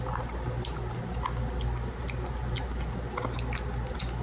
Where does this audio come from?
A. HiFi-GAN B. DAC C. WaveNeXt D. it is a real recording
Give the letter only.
D